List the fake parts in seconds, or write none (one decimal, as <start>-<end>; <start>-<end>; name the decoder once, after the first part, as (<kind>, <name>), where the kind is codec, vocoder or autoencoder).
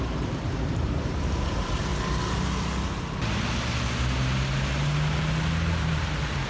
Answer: 0.0-1.9 (vocoder, BigVGAN v2); 5.8-6.5